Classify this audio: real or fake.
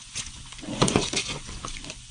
fake